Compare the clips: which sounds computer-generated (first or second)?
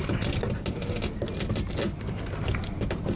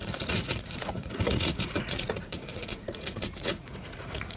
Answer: second